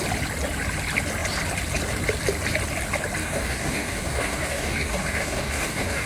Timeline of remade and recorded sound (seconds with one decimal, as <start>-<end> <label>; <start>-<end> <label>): 0.0-3.2 recorded; 3.2-6.1 remade